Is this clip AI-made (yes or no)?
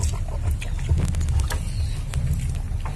no